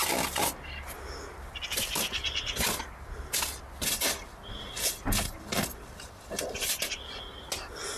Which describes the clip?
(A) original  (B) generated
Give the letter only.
A